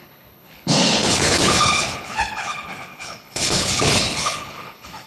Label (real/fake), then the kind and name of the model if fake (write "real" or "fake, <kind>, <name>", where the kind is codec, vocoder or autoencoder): fake, codec, HILCodec